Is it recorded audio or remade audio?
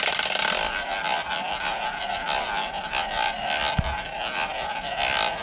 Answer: recorded